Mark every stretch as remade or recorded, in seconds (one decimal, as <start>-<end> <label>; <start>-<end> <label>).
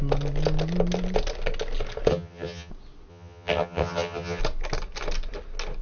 0.0-2.1 recorded; 2.1-2.7 remade; 2.7-3.1 recorded; 3.1-4.4 remade; 4.4-5.8 recorded